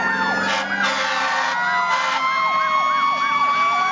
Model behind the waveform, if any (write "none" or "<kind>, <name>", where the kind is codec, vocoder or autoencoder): none